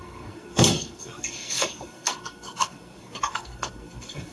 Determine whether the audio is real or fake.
fake